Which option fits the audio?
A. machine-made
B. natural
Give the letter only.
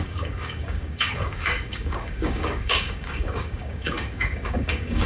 A